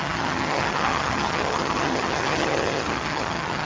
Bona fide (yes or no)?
no